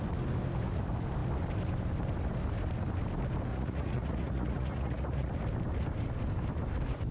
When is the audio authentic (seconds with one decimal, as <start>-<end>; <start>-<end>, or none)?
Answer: 0.0-3.5; 5.3-7.1